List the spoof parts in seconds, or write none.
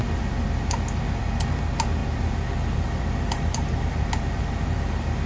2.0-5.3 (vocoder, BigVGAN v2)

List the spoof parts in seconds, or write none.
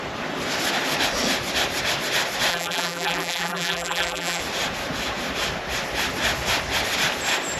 2.5-4.4 (vocoder, BigVGAN v2)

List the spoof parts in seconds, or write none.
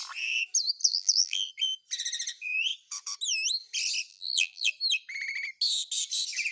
0.8-1.5 (vocoder, BigVGAN v2); 4.1-4.7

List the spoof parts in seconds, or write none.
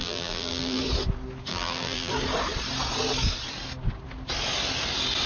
0.0-0.8 (vocoder, BigVGAN v2); 1.5-2.1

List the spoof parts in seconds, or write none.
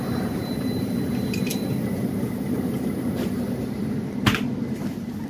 0.0-1.5 (vocoder, BigVGAN v2); 4.7-5.3